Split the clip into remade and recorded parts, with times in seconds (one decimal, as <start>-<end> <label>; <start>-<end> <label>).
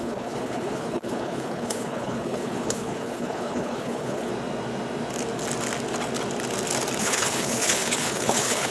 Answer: 0.0-4.3 remade; 4.3-7.0 recorded; 7.0-8.7 remade